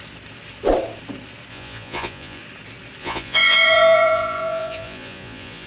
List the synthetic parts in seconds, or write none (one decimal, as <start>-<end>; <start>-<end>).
1.5-2.4; 3.0-5.7